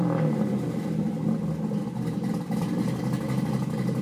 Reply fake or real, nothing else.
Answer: real